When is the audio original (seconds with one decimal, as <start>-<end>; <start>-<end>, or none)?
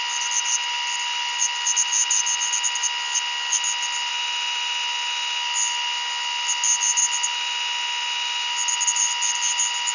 0.0-9.9